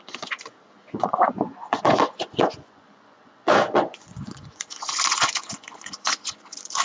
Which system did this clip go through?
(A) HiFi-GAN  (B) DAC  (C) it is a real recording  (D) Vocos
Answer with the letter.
D